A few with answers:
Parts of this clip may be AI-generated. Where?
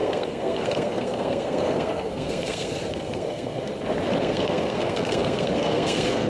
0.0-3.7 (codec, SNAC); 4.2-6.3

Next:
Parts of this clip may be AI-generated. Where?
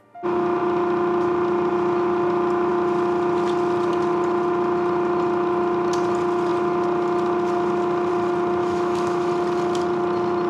8.6-9.3 (autoencoder, DAC-VAE)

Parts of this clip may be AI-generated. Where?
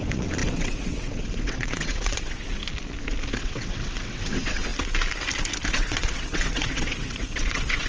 0.0-2.6 (vocoder, WaveNeXt); 3.4-4.7; 5.7-7.9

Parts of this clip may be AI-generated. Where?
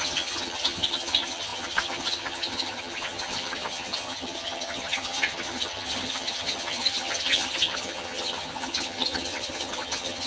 0.0-10.3 (vocoder, HiFi-GAN)